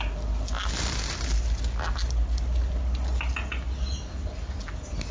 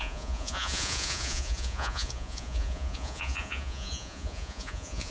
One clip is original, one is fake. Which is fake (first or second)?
second